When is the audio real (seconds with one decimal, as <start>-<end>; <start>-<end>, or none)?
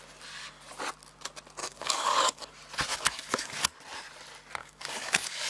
0.0-1.6; 2.5-2.9; 3.6-4.6